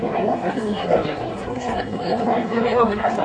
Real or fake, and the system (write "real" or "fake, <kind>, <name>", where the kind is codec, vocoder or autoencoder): fake, codec, SNAC